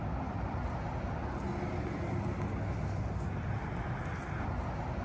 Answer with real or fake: real